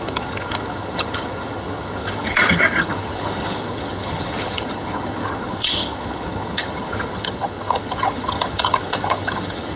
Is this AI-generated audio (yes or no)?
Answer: yes